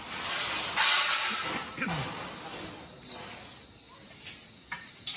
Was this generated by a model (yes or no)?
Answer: no